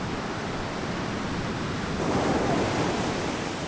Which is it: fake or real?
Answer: real